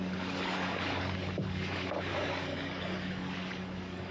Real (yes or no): no